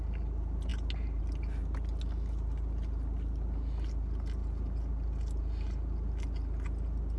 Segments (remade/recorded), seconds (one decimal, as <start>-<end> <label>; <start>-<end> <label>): 0.0-7.2 recorded